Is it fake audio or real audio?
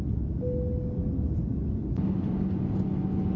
real